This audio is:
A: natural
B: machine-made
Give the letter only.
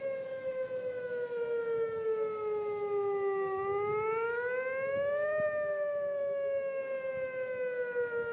B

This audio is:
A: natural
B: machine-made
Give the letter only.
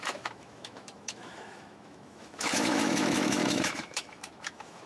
B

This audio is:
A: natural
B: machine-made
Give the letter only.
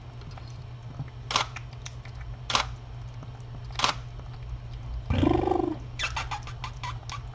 A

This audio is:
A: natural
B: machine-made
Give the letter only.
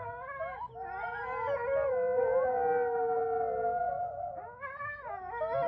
A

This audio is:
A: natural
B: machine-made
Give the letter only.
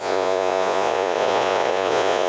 B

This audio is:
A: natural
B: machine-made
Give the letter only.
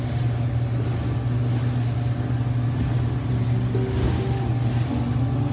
A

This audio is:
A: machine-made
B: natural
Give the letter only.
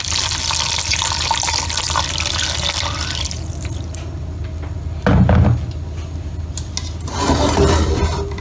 B